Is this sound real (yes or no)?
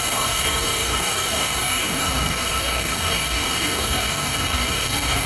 no